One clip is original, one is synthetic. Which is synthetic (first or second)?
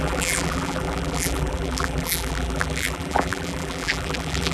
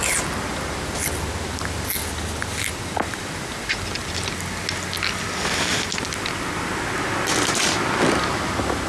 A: first